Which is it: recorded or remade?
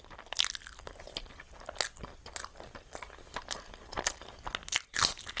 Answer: recorded